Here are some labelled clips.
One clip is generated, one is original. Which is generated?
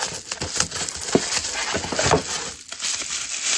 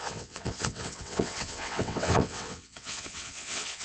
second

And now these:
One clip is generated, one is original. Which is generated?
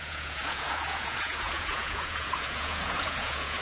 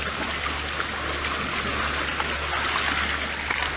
first